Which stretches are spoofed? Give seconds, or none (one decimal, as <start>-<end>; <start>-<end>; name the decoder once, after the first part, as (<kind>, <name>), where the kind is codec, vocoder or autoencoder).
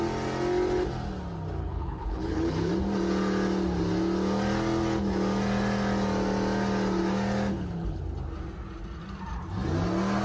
1.6-2.7 (codec, HILCodec); 7.5-8.0